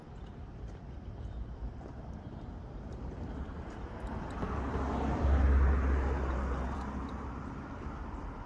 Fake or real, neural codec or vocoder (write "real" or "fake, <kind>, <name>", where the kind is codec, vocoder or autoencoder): fake, vocoder, BigVGAN v2